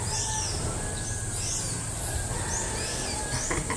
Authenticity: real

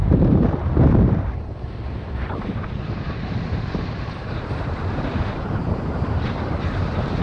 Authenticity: fake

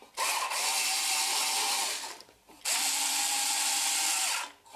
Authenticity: real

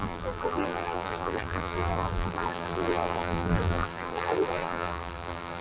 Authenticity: fake